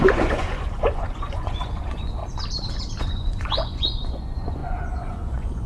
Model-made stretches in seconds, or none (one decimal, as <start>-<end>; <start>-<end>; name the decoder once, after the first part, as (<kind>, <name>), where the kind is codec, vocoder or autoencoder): 0.0-2.2 (vocoder, Vocos); 3.0-5.7